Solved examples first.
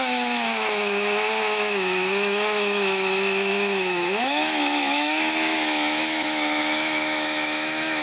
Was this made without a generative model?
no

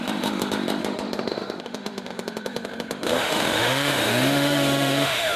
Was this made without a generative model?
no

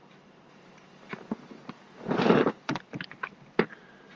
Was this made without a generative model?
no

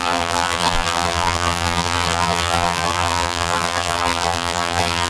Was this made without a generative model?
no